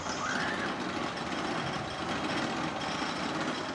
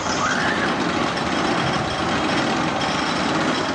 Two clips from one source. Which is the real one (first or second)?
first